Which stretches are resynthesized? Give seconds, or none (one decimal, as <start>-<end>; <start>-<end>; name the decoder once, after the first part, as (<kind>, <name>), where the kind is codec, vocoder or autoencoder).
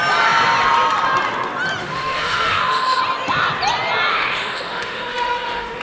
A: 1.8-3.0 (autoencoder, DAC-VAE); 4.1-5.8